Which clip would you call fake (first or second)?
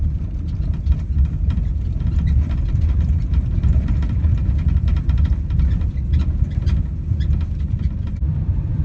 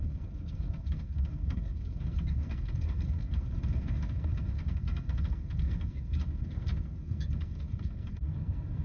second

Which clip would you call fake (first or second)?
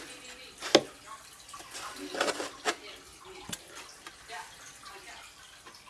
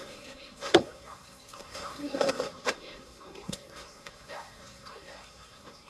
second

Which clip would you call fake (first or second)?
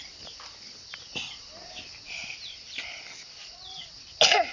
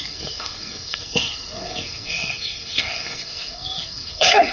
second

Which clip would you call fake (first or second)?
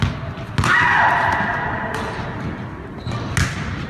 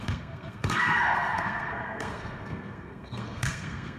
second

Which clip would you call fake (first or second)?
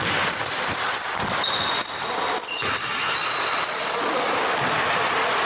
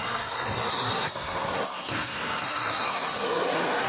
second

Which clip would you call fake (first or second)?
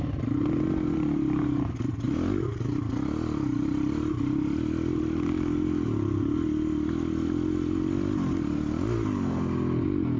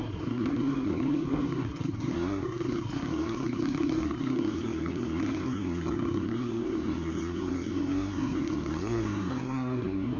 second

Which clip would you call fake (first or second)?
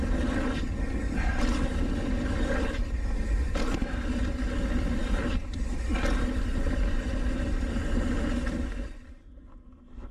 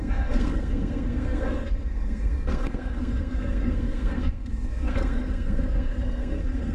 second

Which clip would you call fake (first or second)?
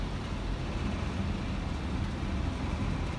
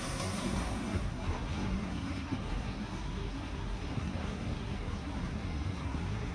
second